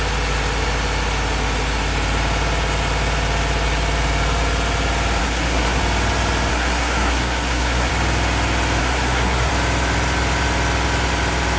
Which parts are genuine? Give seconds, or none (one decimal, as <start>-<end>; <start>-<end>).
0.0-5.2; 5.8-6.5; 7.9-8.8; 9.5-11.6